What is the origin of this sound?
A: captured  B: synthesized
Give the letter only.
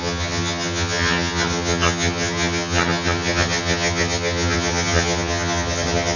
B